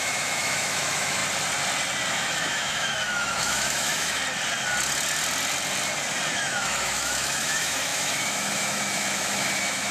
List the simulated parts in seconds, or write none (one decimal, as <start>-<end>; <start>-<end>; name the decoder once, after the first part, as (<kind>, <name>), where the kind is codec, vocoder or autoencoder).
0.0-1.2 (autoencoder, DAC-VAE); 2.1-4.2; 6.3-9.9